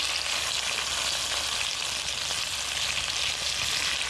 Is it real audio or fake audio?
real